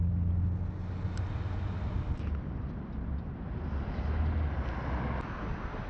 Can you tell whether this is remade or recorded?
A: recorded